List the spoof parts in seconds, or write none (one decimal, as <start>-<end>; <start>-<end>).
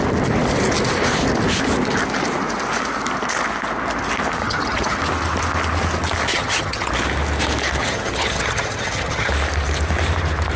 4.4-5.0; 6.3-6.9; 7.8-9.3